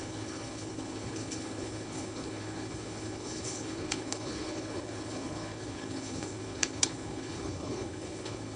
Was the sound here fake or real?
fake